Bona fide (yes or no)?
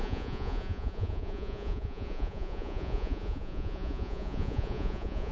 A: no